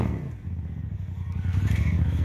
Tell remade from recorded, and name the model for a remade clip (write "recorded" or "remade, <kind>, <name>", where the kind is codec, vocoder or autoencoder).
remade, codec, SNAC